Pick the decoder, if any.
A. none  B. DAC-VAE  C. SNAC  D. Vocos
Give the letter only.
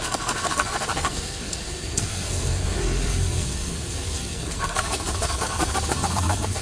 C